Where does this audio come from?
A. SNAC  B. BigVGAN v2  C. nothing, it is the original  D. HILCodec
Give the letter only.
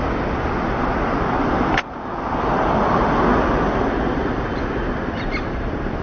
C